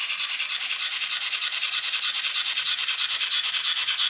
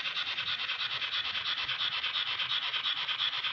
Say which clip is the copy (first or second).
first